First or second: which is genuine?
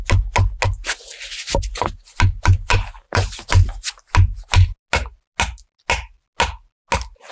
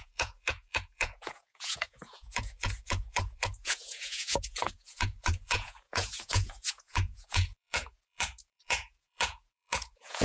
first